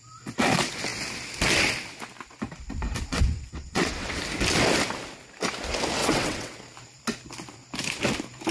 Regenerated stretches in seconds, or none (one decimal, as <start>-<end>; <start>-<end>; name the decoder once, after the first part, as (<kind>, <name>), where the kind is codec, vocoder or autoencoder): 3.1-4.2 (vocoder, WaveNeXt); 6.0-6.6